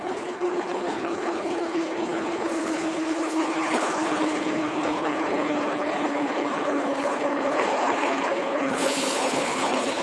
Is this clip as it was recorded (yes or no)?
no